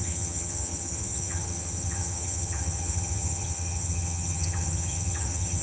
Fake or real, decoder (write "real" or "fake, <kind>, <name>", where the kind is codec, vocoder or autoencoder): fake, vocoder, HiFi-GAN